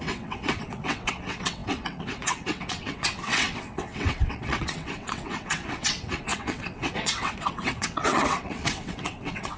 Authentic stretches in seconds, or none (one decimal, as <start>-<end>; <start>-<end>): none